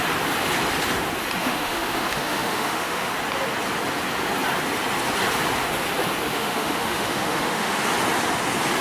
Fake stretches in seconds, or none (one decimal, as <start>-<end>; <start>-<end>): 1.4-3.1; 6.3-7.8